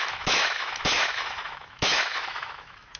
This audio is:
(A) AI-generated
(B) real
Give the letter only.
A